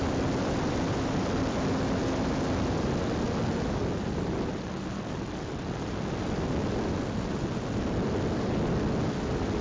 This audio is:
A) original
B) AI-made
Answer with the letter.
A